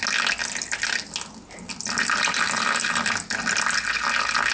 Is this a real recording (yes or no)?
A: yes